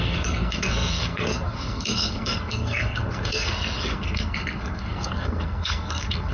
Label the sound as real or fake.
fake